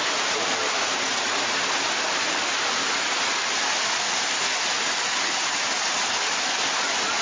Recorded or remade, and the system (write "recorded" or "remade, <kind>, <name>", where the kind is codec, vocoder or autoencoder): recorded